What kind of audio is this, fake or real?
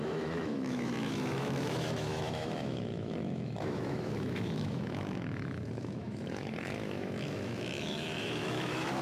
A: fake